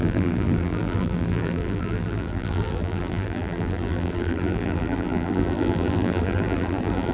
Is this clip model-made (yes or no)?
yes